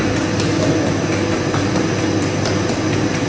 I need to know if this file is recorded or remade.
recorded